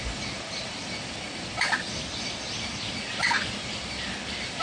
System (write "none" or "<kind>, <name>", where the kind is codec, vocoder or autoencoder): none